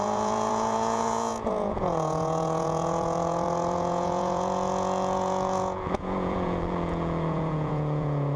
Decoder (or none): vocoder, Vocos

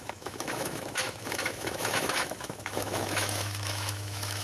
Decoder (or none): autoencoder, DAC-VAE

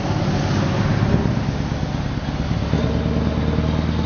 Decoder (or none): none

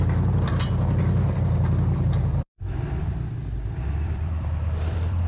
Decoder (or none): vocoder, BigVGAN v2